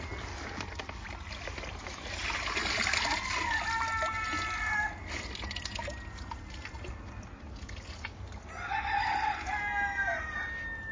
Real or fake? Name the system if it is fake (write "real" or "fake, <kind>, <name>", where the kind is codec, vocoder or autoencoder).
real